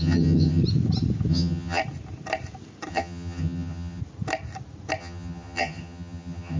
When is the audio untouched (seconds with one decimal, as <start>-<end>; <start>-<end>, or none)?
0.6-1.3; 1.8-2.9; 4.0-5.0